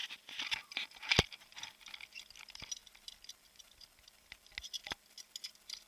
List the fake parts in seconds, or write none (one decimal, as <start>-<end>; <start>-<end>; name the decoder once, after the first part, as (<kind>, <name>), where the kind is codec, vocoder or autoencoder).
none